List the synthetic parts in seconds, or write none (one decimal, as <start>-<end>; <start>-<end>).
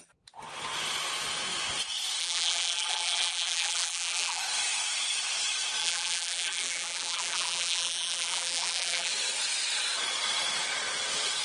2.2-4.4; 5.8-9.1